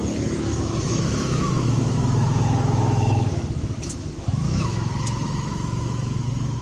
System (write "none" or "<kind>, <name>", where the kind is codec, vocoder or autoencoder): autoencoder, DAC-VAE